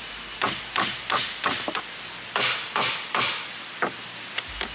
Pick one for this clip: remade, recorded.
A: recorded